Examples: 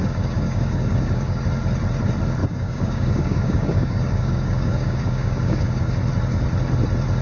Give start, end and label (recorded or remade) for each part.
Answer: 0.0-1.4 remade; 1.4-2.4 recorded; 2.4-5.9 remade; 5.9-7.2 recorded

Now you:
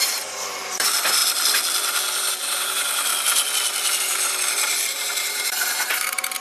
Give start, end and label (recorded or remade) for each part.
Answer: 0.0-1.2 remade; 1.2-2.4 recorded; 2.4-3.1 remade; 3.1-4.0 recorded; 4.0-6.4 remade